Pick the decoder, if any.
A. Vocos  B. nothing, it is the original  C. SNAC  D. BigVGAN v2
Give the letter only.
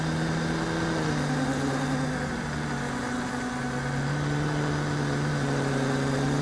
B